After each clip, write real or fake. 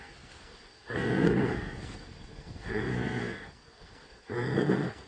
fake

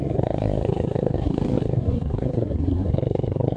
fake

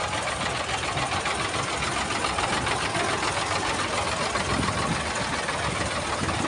real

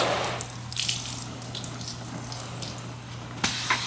real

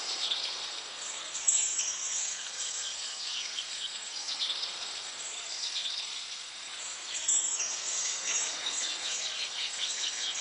fake